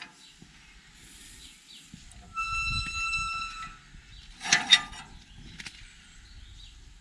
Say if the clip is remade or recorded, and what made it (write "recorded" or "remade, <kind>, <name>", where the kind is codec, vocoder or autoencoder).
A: recorded